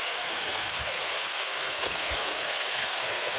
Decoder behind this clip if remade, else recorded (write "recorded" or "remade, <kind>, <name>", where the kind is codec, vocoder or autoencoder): remade, codec, SNAC